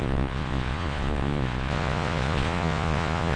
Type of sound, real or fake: fake